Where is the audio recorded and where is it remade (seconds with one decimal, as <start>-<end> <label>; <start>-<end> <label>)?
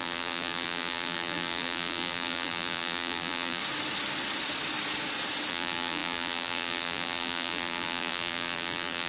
0.0-3.6 remade; 3.6-5.5 recorded; 5.5-9.1 remade